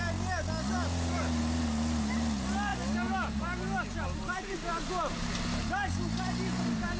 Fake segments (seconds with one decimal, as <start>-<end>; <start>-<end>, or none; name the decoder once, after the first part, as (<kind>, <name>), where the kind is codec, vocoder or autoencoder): none